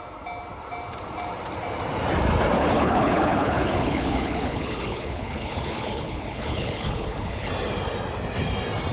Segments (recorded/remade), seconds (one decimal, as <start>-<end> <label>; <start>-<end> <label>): 0.0-2.6 recorded; 2.6-7.5 remade; 7.5-8.9 recorded